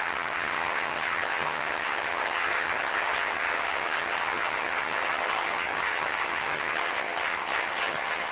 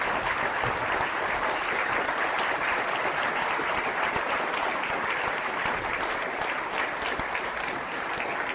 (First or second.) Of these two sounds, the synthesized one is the first